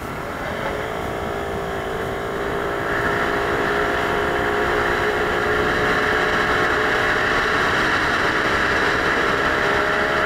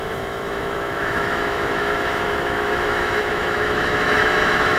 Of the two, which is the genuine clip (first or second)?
first